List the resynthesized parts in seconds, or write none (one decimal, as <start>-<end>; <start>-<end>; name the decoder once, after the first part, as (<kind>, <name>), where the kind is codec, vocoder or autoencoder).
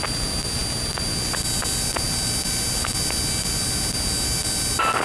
none